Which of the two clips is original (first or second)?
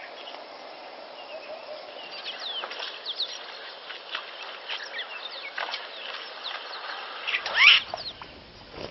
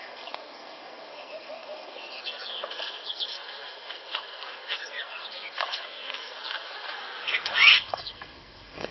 first